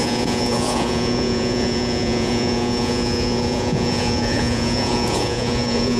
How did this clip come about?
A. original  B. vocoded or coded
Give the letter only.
B